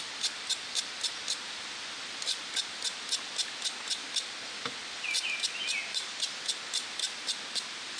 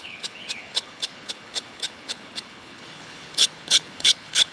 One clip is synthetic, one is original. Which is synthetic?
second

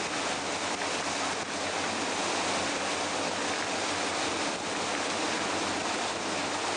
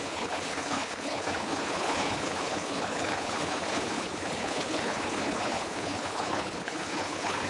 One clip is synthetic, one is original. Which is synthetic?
second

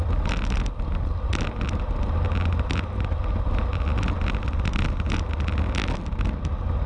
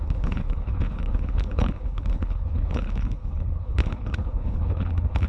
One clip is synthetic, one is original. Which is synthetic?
second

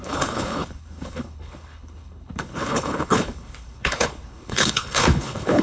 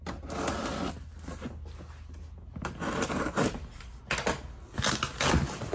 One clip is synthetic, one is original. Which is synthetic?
first